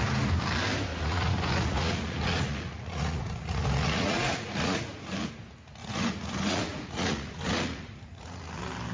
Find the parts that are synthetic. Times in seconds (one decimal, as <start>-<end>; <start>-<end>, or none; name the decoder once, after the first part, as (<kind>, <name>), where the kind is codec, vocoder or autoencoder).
0.9-5.3 (vocoder, Vocos); 5.8-8.4